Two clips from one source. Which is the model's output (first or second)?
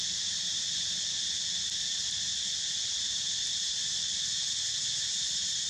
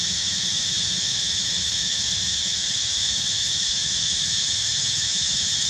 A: second